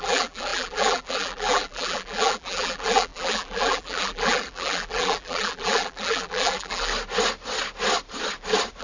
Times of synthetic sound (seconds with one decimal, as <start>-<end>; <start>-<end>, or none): 0.0-6.9